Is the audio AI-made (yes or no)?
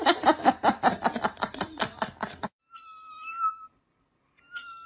yes